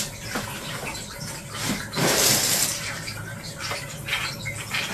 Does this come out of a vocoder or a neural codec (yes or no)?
no